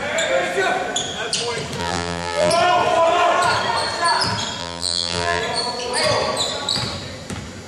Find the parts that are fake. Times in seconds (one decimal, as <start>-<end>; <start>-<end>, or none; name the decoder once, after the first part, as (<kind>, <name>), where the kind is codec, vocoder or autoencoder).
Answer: 1.8-2.5 (vocoder, BigVGAN v2); 4.6-5.4